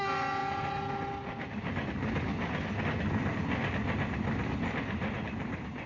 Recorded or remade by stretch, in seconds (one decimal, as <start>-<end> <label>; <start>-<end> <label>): 0.0-5.9 recorded